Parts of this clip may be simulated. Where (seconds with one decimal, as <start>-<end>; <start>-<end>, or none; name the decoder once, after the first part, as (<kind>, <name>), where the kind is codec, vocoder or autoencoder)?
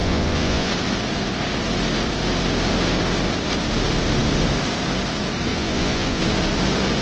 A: 0.0-0.7 (vocoder, Vocos); 5.5-6.2